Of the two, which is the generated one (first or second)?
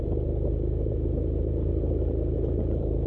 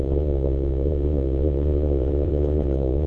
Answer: second